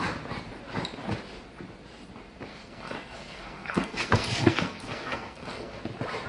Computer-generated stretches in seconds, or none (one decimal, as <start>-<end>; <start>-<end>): 2.5-5.8